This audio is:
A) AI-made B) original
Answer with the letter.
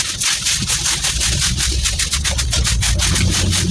B